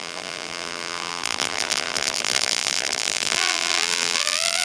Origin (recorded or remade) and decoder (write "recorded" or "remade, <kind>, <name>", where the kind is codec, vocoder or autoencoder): remade, vocoder, BigVGAN v2